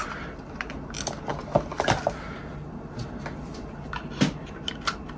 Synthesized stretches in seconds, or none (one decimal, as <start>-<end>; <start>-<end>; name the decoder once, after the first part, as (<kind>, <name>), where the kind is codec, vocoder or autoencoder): none